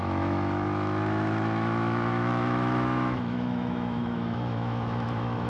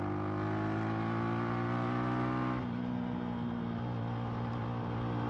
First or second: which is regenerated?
first